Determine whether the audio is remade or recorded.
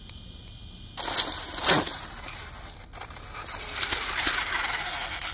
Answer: recorded